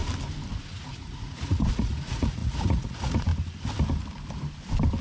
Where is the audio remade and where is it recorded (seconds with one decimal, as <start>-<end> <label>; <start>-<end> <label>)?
0.0-0.7 recorded; 0.7-3.3 remade; 3.3-5.0 recorded